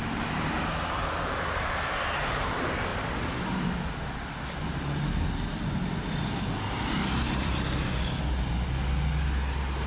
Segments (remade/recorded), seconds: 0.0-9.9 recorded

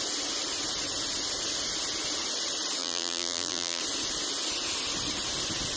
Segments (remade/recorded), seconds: 0.0-2.8 recorded; 2.8-3.8 remade; 3.8-5.8 recorded